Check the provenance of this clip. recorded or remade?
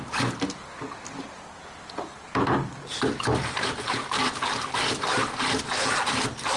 recorded